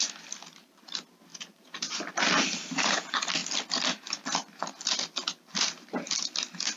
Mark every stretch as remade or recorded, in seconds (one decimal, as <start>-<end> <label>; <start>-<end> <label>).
0.0-1.3 recorded; 1.3-2.1 remade; 2.1-6.8 recorded